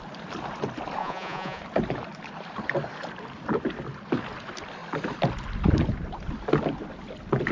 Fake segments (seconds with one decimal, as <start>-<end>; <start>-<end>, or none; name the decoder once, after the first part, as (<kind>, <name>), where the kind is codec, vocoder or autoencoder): 1.0-1.6 (vocoder, Vocos)